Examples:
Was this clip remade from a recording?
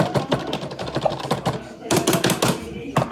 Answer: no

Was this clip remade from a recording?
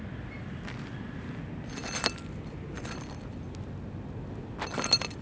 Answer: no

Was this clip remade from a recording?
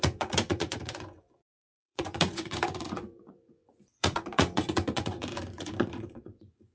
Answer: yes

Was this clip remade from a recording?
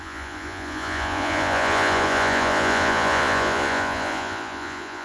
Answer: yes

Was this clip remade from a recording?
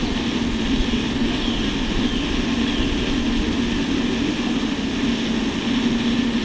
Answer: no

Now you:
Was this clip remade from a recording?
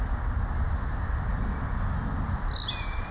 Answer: no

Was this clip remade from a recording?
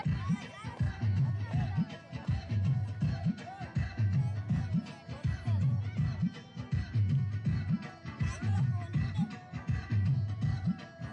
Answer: no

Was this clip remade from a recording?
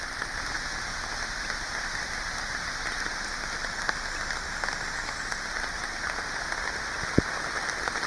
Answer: no